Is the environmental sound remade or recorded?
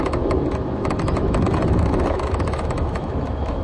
remade